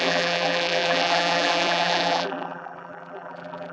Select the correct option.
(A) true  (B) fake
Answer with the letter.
B